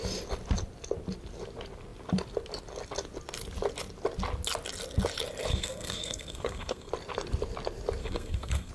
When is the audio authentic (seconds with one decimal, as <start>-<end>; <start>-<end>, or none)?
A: 0.0-5.5; 6.9-8.0